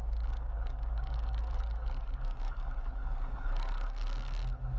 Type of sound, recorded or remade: remade